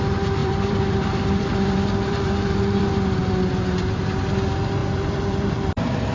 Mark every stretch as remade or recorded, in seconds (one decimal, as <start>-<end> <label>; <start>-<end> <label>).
0.0-0.4 recorded; 0.4-2.8 remade; 2.8-4.8 recorded; 4.8-6.1 remade